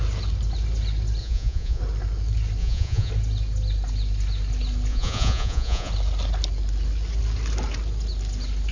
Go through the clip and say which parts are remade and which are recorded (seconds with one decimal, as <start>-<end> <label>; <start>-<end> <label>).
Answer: 0.0-1.2 recorded; 1.2-1.8 remade; 1.8-2.6 recorded; 2.6-3.1 remade; 3.1-4.9 recorded; 4.9-5.9 remade; 5.9-8.7 recorded